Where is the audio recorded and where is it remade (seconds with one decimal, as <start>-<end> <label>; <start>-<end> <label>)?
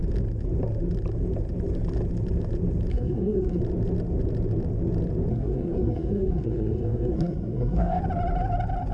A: 0.0-2.9 recorded; 2.9-3.6 remade; 3.6-5.3 recorded; 5.3-8.0 remade; 8.0-8.9 recorded